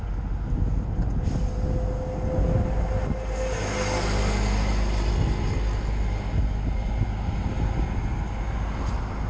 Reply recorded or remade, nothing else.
recorded